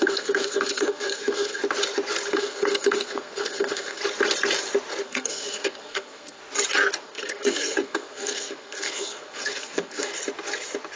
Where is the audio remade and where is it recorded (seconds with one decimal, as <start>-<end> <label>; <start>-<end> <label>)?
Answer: 0.0-1.6 remade; 1.6-2.3 recorded; 2.3-4.0 remade; 4.0-5.0 recorded; 5.0-6.4 remade; 6.4-7.0 recorded; 7.0-10.1 remade; 10.1-11.0 recorded